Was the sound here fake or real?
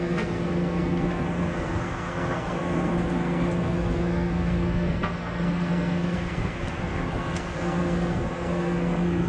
fake